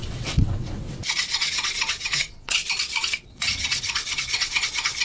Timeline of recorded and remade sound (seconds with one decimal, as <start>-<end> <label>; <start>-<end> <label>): 0.0-2.6 remade; 2.6-3.2 recorded; 3.2-5.0 remade